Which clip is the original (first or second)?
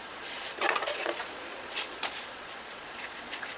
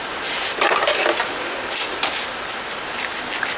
second